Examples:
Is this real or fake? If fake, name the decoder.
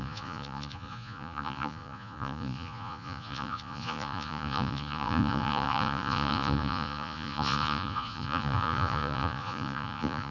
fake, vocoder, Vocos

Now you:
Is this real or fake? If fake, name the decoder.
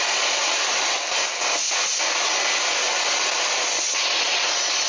real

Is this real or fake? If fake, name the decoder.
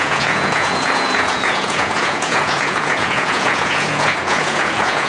fake, vocoder, Vocos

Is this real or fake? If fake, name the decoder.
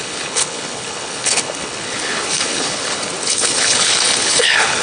fake, codec, HILCodec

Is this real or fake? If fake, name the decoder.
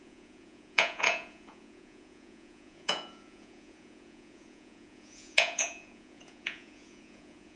fake, vocoder, Vocos